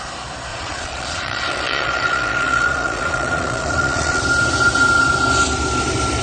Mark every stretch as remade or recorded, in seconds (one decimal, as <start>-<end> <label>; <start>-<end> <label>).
0.0-0.5 recorded; 0.5-4.2 remade; 4.2-6.2 recorded